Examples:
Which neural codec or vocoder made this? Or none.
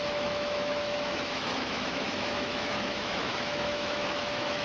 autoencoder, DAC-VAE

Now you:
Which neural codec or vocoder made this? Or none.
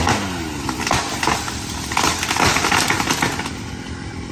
none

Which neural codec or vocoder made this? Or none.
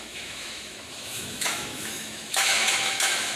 autoencoder, DAC-VAE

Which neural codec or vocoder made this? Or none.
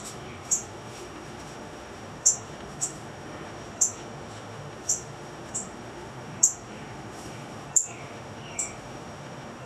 autoencoder, DAC-VAE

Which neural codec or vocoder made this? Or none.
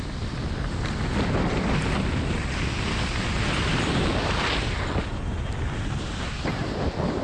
none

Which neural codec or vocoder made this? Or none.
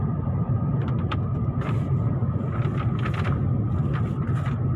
none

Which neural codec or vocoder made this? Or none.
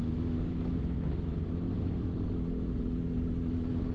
autoencoder, DAC-VAE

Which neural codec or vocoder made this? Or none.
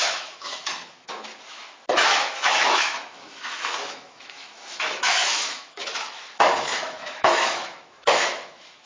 autoencoder, DAC-VAE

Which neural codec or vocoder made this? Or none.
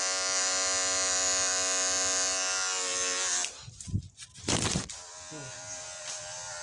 none